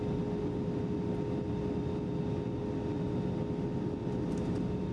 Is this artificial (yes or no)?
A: no